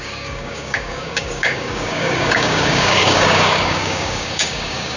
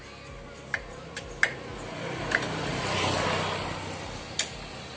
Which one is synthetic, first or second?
first